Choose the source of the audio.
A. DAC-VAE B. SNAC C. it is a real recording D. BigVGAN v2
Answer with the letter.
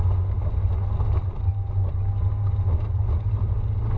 C